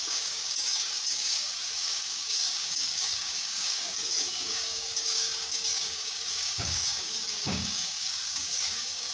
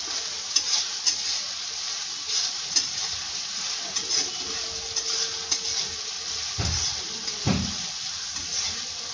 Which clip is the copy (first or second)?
first